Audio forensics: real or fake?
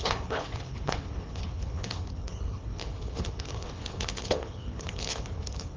fake